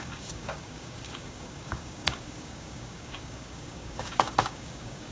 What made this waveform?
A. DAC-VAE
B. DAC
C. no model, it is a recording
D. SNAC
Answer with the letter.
B